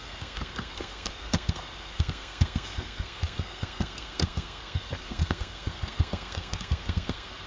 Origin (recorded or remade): remade